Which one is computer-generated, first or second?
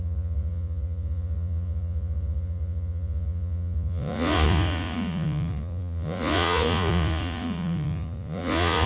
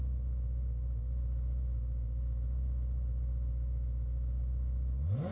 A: first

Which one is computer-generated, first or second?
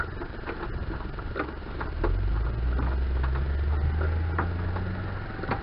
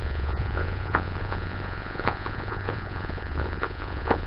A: second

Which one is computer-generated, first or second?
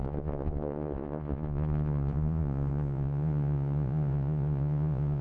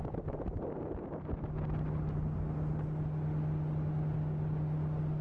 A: first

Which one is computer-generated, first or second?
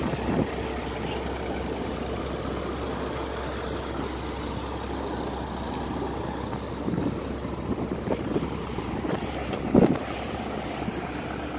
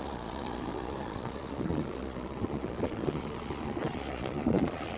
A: second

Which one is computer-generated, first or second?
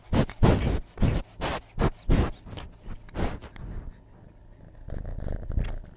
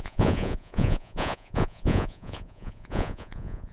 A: second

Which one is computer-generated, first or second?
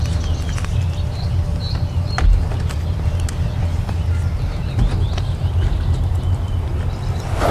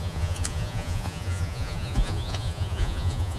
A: second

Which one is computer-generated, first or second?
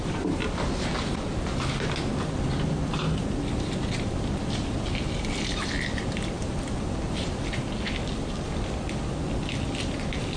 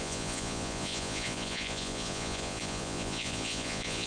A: second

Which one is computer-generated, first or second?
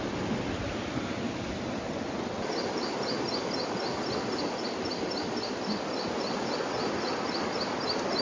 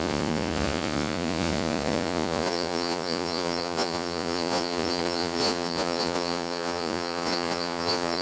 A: second